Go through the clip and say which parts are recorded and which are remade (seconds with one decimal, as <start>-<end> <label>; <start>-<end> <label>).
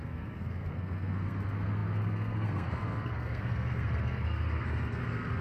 0.0-5.4 remade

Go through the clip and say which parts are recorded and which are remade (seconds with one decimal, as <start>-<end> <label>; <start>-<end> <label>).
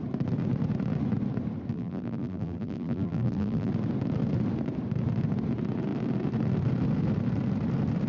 0.0-1.7 recorded; 1.7-3.7 remade; 3.7-8.1 recorded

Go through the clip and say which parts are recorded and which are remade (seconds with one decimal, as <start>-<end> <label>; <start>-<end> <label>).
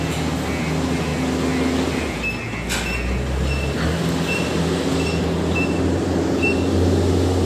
0.0-7.4 recorded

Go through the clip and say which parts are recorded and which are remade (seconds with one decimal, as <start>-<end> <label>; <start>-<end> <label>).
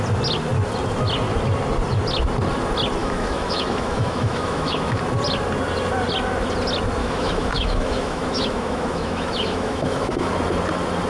0.0-3.0 recorded; 3.0-5.0 remade; 5.0-7.0 recorded; 7.0-10.3 remade; 10.3-11.1 recorded